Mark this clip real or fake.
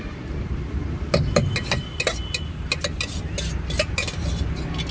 real